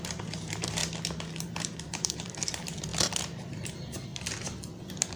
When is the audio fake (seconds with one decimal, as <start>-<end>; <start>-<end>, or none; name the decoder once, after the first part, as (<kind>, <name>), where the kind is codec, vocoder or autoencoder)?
0.0-0.8 (vocoder, BigVGAN v2); 1.4-2.9; 3.5-4.1